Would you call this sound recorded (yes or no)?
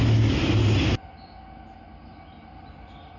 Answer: yes